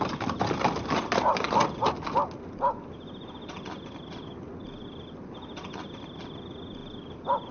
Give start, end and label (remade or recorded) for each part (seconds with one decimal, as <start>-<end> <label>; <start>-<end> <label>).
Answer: 0.0-7.5 recorded